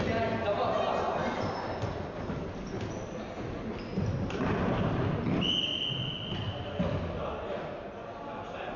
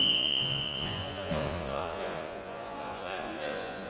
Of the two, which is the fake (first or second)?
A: second